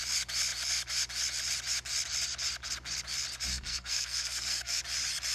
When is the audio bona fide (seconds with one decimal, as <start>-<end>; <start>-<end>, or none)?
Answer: 0.0-3.5; 4.8-5.3